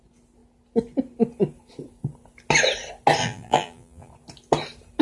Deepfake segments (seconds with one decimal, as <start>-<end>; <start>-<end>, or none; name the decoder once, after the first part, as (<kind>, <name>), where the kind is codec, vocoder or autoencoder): 3.2-4.1 (vocoder, BigVGAN v2)